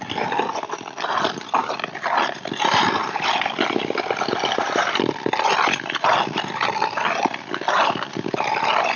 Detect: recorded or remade recorded